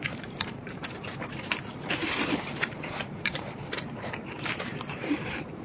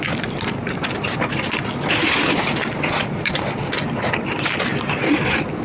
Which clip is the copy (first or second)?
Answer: first